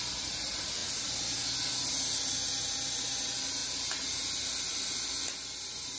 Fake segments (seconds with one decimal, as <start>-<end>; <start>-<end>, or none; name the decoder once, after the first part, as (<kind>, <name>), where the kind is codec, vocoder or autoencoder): 0.0-0.8 (vocoder, BigVGAN v2); 3.0-3.6; 4.4-6.0